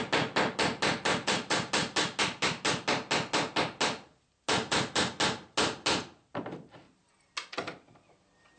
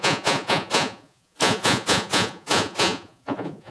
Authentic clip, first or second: first